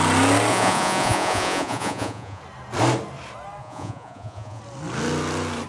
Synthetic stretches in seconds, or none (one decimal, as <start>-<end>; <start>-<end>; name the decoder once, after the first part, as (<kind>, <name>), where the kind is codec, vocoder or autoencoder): 0.5-2.4 (vocoder, Vocos); 3.6-4.6